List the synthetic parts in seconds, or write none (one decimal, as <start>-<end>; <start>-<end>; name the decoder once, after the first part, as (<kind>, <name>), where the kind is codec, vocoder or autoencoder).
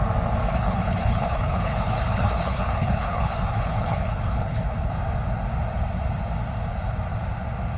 0.5-4.9 (codec, HILCodec)